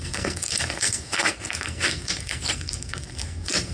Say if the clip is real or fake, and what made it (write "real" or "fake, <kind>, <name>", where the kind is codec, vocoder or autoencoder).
fake, codec, SNAC